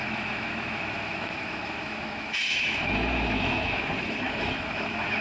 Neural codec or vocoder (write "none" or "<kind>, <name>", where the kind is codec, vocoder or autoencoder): autoencoder, DAC-VAE